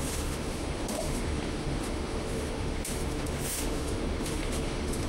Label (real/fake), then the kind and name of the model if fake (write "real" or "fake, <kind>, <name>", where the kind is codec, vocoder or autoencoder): fake, autoencoder, DAC-VAE